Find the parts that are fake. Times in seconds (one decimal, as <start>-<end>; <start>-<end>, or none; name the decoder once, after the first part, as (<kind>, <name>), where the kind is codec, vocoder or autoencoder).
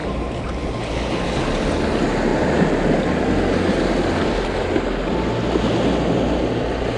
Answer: 0.0-0.7 (vocoder, BigVGAN v2)